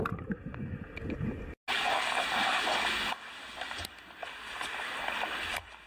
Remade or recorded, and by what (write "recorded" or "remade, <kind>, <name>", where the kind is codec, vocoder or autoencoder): recorded